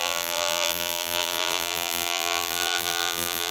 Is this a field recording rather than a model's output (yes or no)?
no